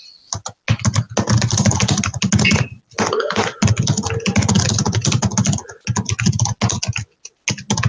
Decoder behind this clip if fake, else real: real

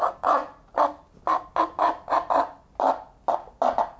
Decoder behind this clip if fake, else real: real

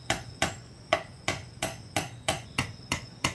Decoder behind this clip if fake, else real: fake, vocoder, Vocos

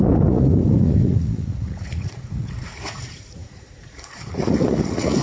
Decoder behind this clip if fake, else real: fake, vocoder, Vocos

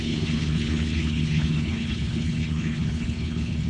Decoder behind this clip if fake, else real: fake, codec, HILCodec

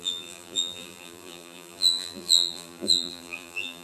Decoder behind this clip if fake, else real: fake, vocoder, BigVGAN v2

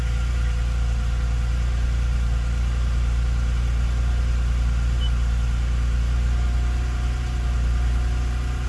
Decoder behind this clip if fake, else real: real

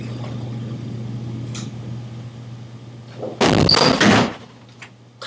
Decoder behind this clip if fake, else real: real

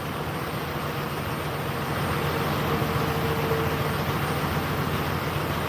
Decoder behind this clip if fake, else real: real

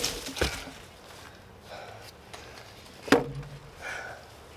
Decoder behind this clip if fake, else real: real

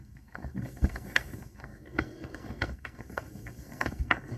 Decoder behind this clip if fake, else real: fake, codec, SNAC